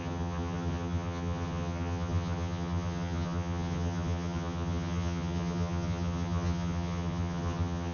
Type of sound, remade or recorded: remade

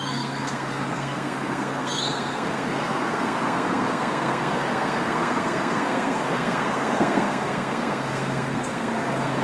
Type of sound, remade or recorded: remade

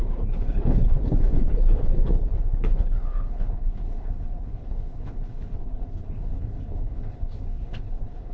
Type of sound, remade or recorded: remade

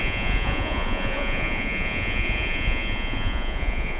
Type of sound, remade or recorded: remade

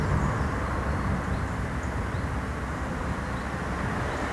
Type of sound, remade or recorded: recorded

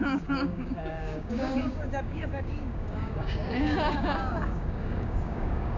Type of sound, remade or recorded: remade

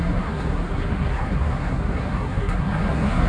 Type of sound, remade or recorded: remade